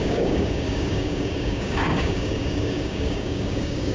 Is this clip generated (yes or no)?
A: yes